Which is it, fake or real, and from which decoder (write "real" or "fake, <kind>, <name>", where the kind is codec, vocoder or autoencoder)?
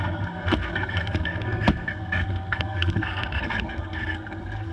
fake, codec, SNAC